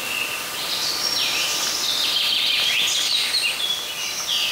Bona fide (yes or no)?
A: yes